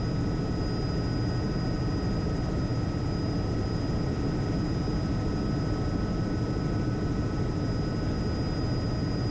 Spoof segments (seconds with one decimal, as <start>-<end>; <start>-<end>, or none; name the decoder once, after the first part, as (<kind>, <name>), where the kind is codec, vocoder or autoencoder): none